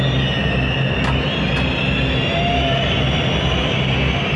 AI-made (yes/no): no